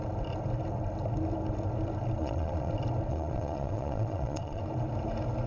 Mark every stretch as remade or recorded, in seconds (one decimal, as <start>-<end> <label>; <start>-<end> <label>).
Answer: 0.0-2.2 recorded; 2.2-2.7 remade; 2.7-3.1 recorded; 3.1-4.6 remade; 4.6-5.5 recorded